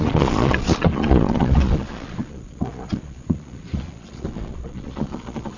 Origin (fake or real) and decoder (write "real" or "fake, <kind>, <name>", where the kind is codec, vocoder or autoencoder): fake, vocoder, Vocos